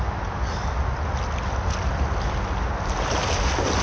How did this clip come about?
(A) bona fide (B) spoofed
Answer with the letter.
A